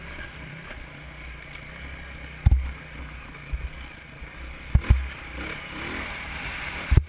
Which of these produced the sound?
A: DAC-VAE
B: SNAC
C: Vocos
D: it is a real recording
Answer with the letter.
D